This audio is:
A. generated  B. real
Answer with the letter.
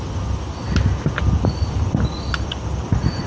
B